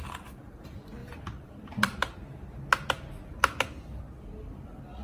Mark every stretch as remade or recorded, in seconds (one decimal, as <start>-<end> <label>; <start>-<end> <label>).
0.0-1.0 recorded; 1.0-4.0 remade; 4.0-5.0 recorded